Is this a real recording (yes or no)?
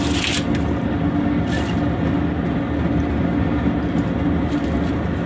yes